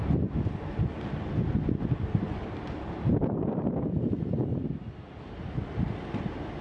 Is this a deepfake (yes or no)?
no